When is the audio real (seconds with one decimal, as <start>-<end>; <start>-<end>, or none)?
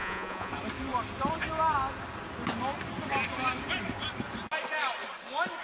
0.5-5.6